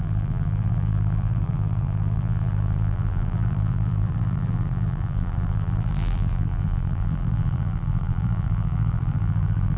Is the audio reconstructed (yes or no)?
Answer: yes